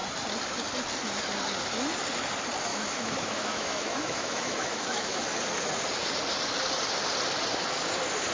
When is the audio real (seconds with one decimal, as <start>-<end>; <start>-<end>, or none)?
0.0-2.7; 5.2-8.3